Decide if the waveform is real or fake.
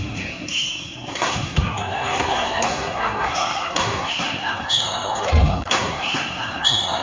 fake